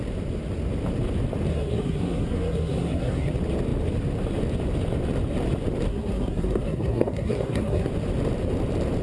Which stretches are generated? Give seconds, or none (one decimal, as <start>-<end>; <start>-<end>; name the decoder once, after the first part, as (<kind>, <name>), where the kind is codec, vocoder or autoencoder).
1.5-3.3 (codec, SNAC); 5.9-7.9

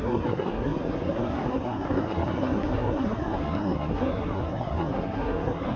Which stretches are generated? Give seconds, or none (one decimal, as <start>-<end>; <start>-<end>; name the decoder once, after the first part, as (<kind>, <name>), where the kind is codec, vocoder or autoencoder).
0.0-5.8 (codec, SNAC)

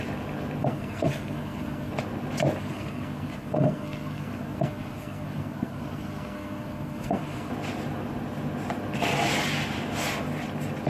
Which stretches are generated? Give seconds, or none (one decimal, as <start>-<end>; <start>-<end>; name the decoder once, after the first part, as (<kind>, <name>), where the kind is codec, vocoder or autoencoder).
0.6-1.9 (codec, SNAC); 2.6-7.5

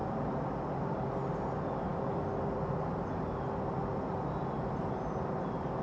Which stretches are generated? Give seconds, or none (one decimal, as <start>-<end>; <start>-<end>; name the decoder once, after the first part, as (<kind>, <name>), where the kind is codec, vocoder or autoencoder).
none

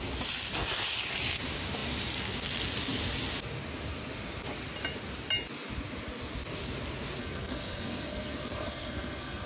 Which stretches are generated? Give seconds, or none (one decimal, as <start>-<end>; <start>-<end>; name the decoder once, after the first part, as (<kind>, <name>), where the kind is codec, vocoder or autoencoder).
7.2-9.5 (codec, SNAC)

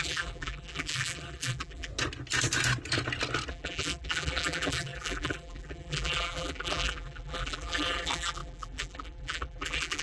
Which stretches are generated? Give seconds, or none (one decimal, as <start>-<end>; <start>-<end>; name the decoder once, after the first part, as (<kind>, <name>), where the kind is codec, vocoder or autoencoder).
0.0-1.9 (vocoder, BigVGAN v2); 3.5-10.0

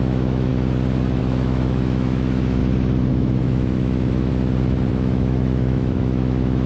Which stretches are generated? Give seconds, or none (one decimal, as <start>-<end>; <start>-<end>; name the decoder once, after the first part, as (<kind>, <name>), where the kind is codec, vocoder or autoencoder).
0.0-0.5 (autoencoder, DAC-VAE); 1.2-2.6; 3.1-4.3; 4.9-6.7